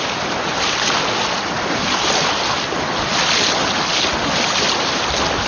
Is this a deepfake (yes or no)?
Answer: no